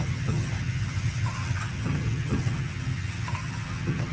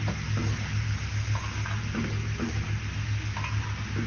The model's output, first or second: first